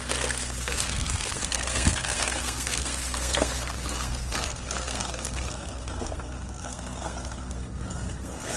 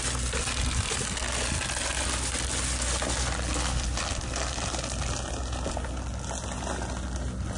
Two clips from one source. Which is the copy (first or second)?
first